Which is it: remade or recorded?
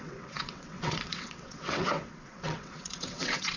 remade